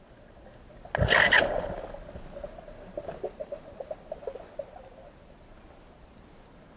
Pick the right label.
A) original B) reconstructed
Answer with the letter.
A